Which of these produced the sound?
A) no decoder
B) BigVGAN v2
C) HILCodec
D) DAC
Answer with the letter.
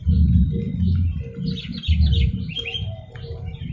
A